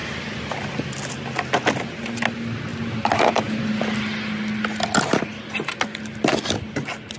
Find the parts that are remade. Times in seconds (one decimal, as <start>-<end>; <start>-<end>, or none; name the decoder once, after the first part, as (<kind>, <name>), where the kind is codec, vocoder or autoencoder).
none